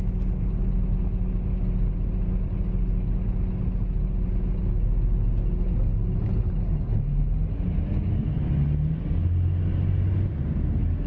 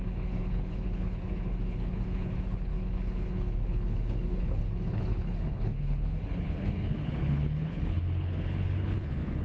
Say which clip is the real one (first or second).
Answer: first